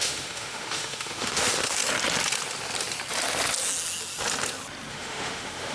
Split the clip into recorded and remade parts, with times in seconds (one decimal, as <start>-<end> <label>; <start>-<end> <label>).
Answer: 0.0-1.8 remade; 1.8-4.9 recorded; 4.9-5.7 remade